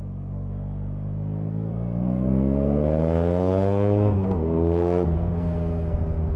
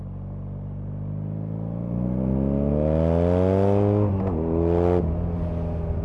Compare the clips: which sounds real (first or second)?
second